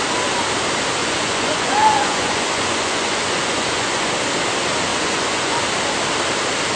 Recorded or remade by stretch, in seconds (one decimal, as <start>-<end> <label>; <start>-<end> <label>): 0.0-1.0 recorded; 1.0-4.1 remade; 4.1-4.9 recorded; 4.9-5.6 remade; 5.6-6.8 recorded